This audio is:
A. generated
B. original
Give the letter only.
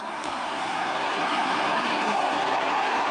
A